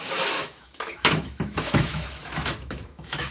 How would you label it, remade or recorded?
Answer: remade